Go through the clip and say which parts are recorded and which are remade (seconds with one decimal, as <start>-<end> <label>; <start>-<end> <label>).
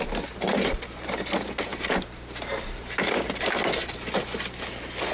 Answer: 0.0-5.1 recorded